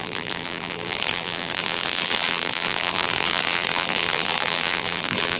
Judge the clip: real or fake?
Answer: fake